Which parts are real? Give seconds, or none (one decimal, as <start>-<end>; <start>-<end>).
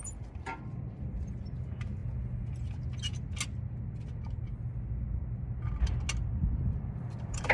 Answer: 2.0-6.5